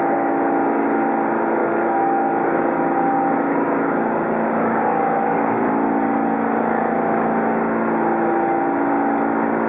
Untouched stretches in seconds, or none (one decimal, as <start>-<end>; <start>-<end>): 0.0-1.6; 5.7-9.7